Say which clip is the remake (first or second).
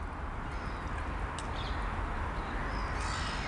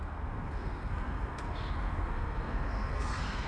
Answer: second